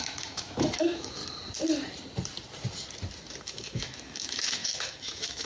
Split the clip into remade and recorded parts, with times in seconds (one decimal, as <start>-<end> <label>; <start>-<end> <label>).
0.0-1.2 remade; 1.2-3.4 recorded; 3.4-5.5 remade